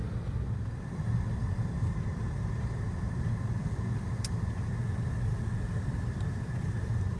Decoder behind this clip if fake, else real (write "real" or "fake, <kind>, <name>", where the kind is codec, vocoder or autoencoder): real